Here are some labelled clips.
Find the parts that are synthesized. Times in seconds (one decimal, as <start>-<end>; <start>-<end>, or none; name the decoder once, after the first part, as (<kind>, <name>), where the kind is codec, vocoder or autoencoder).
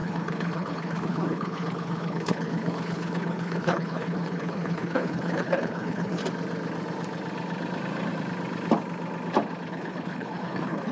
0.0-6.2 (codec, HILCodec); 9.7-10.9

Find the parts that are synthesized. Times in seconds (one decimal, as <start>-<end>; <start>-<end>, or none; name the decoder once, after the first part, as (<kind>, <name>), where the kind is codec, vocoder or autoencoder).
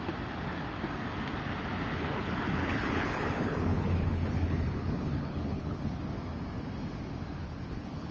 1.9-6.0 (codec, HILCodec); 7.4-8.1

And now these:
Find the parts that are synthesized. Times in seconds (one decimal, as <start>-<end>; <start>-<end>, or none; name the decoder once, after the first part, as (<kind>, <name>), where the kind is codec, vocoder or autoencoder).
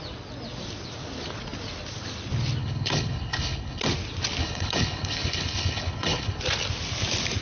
2.6-3.8 (codec, HILCodec); 4.4-6.4